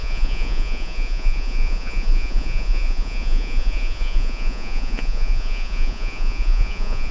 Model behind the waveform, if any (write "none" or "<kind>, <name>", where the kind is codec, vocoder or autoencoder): vocoder, Vocos